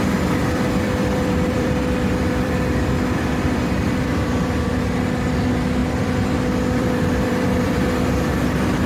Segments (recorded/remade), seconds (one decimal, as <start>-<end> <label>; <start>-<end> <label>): 0.0-0.4 recorded; 0.4-4.7 remade; 4.7-5.8 recorded; 5.8-7.9 remade; 7.9-8.9 recorded

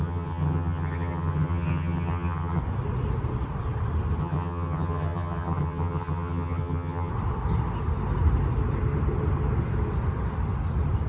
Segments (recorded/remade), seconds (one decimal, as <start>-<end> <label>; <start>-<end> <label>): 0.0-2.6 remade; 2.6-4.2 recorded; 4.2-7.1 remade; 7.1-11.1 recorded

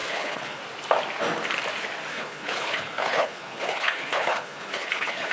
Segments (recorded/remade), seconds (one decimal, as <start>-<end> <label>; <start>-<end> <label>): 0.0-0.6 remade; 0.6-2.1 recorded; 2.1-5.3 remade

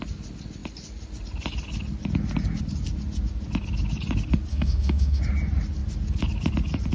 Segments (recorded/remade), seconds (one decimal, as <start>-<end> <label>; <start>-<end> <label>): 0.0-4.5 recorded; 4.5-5.2 remade; 5.2-6.9 recorded

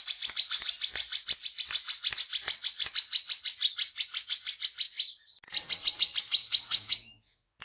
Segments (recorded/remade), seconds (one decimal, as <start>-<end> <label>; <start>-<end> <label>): 0.0-6.4 recorded; 6.4-7.6 remade

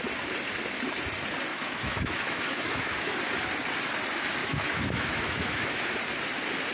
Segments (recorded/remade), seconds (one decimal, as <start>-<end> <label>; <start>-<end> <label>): 0.0-1.5 recorded; 1.5-3.2 remade; 3.2-4.4 recorded; 4.4-5.9 remade; 5.9-6.7 recorded

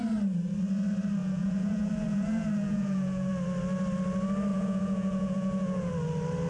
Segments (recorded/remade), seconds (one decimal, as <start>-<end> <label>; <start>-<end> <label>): 0.0-1.2 recorded; 1.2-3.3 remade; 3.3-4.5 recorded; 4.5-5.9 remade; 5.9-6.5 recorded